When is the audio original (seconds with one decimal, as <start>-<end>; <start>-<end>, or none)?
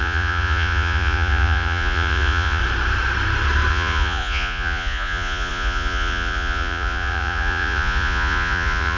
2.6-3.7